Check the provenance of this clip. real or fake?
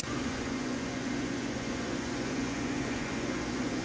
fake